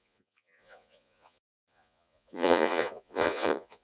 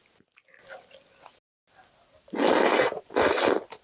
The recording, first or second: second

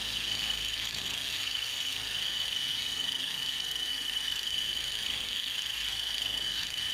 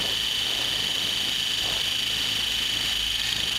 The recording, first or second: second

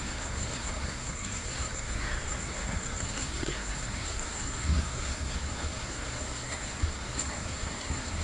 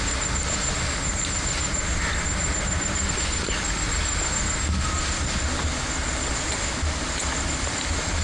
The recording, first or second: second